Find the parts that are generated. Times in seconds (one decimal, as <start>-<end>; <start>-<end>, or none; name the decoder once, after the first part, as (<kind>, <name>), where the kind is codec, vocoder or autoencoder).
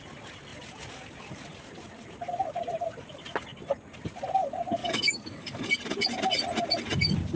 4.8-5.7 (codec, DAC)